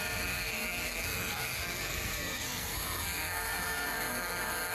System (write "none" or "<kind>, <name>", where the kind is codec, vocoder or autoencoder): codec, SNAC